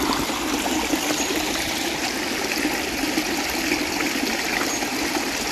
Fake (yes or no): no